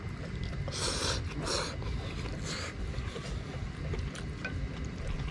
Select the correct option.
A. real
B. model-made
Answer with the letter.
A